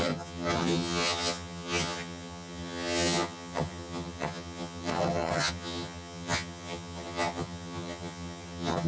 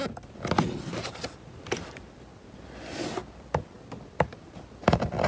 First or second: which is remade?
first